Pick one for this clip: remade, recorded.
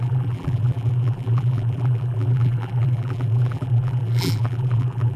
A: remade